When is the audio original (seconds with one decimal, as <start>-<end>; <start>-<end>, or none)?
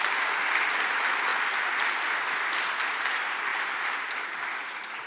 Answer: 0.0-5.1